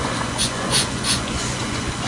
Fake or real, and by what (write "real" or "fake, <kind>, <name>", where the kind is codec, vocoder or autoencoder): fake, vocoder, Vocos